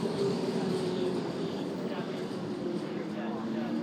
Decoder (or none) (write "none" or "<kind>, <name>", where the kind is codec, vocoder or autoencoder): codec, DAC